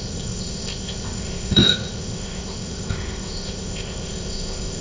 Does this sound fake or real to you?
fake